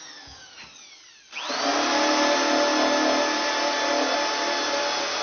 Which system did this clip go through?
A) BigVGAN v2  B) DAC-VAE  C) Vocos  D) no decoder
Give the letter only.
D